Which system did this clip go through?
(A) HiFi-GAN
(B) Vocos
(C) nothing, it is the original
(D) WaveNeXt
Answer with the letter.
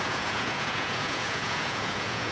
B